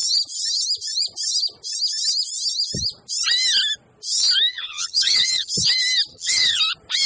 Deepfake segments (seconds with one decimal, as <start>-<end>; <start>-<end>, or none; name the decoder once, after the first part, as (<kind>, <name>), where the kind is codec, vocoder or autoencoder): 4.5-5.5 (vocoder, HiFi-GAN); 6.1-6.6